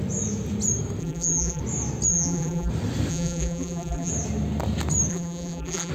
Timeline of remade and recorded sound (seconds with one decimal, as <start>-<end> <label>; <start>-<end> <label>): 0.0-1.0 recorded; 1.0-1.6 remade; 1.6-2.1 recorded; 2.1-2.7 remade; 2.7-3.1 recorded; 3.1-4.1 remade; 4.1-5.1 recorded; 5.1-5.9 remade